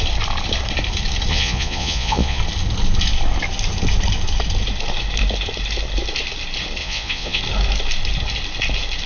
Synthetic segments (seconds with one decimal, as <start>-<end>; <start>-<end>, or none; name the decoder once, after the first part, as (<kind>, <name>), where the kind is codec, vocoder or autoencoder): 1.3-2.4 (vocoder, Vocos); 6.8-7.4